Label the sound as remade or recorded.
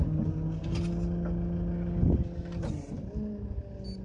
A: recorded